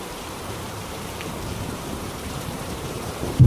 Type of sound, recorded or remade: remade